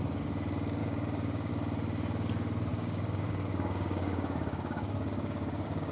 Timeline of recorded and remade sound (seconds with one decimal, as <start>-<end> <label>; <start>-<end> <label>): 0.0-0.8 recorded; 0.8-1.5 remade; 1.5-2.7 recorded; 2.7-5.9 remade